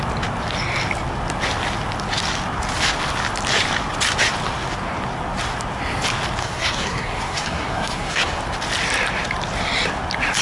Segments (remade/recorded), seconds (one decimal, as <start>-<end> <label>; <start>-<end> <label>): 0.0-6.4 recorded; 6.4-8.4 remade; 8.4-10.4 recorded